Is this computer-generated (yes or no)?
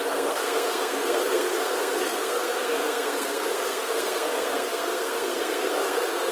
yes